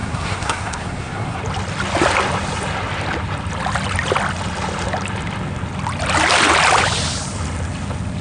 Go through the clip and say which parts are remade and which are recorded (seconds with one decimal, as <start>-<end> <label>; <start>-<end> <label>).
0.0-1.4 remade; 1.4-8.2 recorded